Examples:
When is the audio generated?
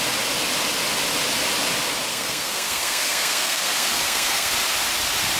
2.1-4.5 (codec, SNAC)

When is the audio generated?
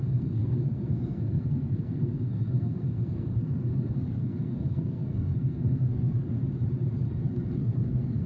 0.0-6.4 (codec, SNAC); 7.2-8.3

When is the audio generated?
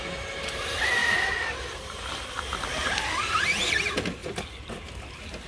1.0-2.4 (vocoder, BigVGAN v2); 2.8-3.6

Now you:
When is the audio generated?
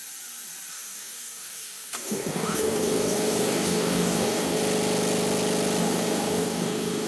0.7-4.6 (codec, DAC); 5.8-7.1